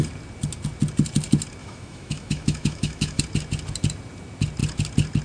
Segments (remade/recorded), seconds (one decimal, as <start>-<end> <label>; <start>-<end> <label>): 0.0-1.6 recorded; 1.6-3.2 remade; 3.2-5.2 recorded